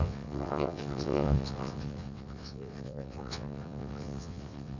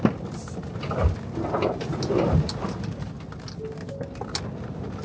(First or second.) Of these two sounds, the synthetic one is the first